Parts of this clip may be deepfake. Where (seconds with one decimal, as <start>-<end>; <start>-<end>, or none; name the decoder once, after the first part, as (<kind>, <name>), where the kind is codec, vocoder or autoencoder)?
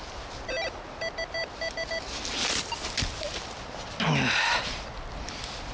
none